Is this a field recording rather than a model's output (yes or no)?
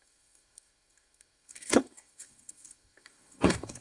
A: no